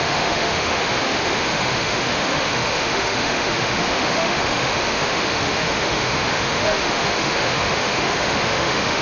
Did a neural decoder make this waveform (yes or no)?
yes